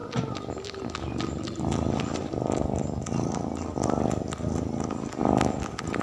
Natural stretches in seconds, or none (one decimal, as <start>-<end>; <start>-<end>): 0.0-6.0